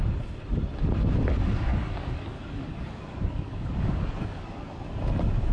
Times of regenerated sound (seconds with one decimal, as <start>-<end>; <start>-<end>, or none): 1.7-5.0